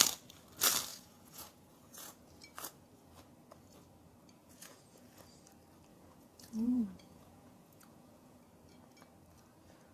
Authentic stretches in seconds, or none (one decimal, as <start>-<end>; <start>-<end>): 0.0-0.9; 2.3-4.4; 5.2-5.9; 8.4-9.9